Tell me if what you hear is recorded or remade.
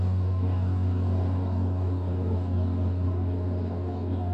remade